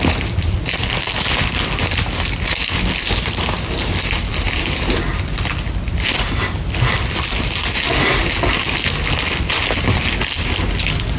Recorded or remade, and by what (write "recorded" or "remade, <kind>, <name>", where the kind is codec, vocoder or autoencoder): recorded